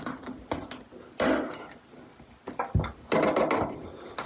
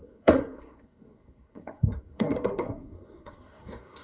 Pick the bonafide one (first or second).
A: first